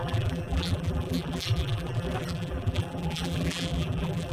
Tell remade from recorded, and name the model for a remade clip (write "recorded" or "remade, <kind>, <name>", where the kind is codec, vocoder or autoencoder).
remade, vocoder, BigVGAN v2